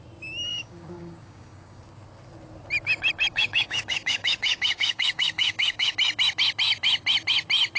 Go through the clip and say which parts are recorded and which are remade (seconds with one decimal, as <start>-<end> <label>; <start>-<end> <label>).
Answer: 0.0-0.5 recorded; 0.5-1.8 remade; 1.8-3.3 recorded; 3.3-5.9 remade; 5.9-7.8 recorded